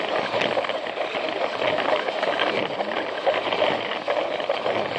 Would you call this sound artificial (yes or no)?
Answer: no